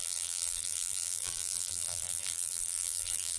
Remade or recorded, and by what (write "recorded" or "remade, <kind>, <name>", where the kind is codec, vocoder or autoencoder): remade, vocoder, BigVGAN v2